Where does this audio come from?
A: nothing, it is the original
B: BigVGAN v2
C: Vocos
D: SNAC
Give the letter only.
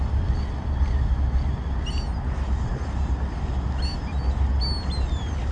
A